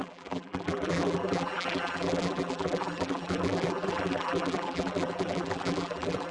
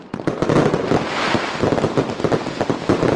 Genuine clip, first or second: second